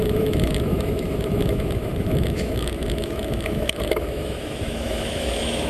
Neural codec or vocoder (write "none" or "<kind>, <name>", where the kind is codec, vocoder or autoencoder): autoencoder, DAC-VAE